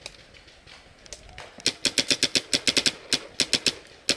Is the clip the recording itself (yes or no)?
yes